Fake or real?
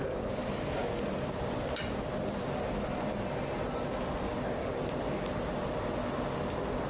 real